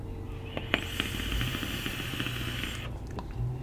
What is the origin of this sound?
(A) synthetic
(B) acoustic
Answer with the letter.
B